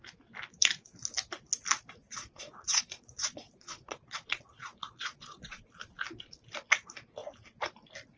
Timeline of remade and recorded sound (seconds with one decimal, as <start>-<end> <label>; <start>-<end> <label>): 0.0-2.0 recorded; 2.0-5.6 remade; 5.6-8.2 recorded